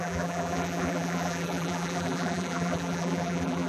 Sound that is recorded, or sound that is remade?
remade